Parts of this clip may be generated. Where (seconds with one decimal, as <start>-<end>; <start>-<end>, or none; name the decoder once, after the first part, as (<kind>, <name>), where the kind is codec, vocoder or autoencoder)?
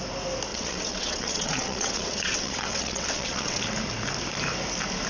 0.5-3.6 (vocoder, WaveNeXt)